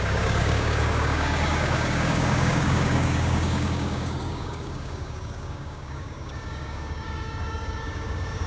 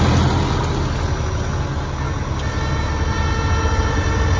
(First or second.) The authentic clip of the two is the second